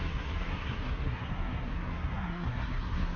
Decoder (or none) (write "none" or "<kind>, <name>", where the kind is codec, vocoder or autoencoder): codec, SNAC